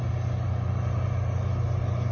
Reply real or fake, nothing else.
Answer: real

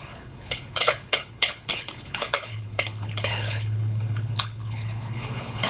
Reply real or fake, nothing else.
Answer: fake